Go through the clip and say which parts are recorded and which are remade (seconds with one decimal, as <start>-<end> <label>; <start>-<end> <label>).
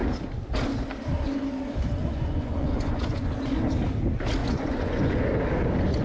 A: 0.0-2.0 recorded; 2.0-3.3 remade; 3.3-4.4 recorded; 4.4-5.2 remade; 5.2-6.0 recorded